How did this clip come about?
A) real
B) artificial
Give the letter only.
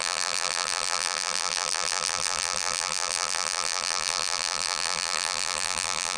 B